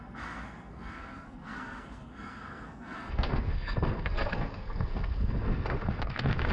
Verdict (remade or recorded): remade